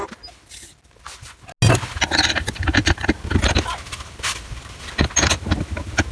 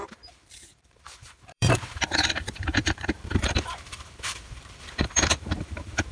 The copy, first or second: second